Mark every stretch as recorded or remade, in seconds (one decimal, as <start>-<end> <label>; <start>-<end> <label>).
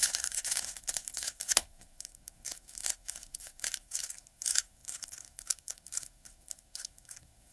0.0-7.5 remade